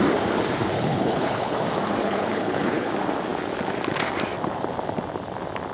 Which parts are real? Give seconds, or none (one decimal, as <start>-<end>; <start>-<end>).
0.0-0.9; 1.6-2.0; 2.9-5.7